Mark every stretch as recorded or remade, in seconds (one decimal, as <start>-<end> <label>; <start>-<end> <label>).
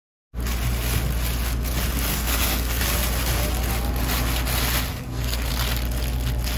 0.0-2.1 recorded; 2.1-2.8 remade; 2.8-4.9 recorded; 4.9-5.5 remade; 5.5-6.6 recorded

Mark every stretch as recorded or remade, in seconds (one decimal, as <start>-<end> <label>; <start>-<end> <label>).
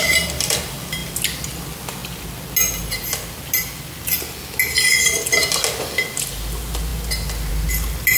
0.0-8.2 recorded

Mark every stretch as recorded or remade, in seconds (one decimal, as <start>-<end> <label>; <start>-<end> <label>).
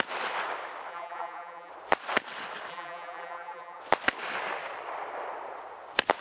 0.0-0.9 recorded; 0.9-1.7 remade; 1.7-2.7 recorded; 2.7-3.8 remade; 3.8-6.2 recorded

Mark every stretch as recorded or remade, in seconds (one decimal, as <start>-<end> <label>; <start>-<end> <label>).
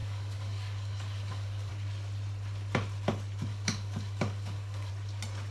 0.0-1.7 remade; 1.7-3.5 recorded; 3.5-4.9 remade; 4.9-5.5 recorded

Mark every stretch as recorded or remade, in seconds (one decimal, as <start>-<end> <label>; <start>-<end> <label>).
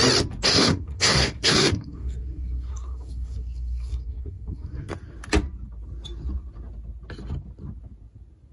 0.0-0.5 recorded; 0.5-4.9 remade; 4.9-8.5 recorded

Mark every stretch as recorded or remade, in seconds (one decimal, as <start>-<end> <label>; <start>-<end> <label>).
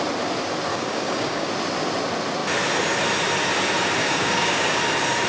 0.0-0.7 recorded; 0.7-1.5 remade; 1.5-4.0 recorded; 4.0-4.8 remade; 4.8-5.3 recorded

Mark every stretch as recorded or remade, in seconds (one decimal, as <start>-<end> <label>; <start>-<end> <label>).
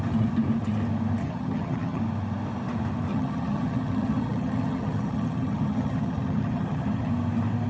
0.0-1.2 recorded; 1.2-2.0 remade; 2.0-3.1 recorded; 3.1-7.1 remade; 7.1-7.7 recorded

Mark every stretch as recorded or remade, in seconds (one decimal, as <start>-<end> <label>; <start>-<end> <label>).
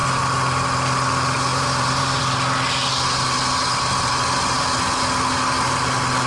0.0-1.5 recorded; 1.5-2.2 remade; 2.2-6.3 recorded